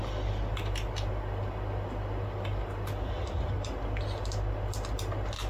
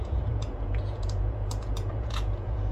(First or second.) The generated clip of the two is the second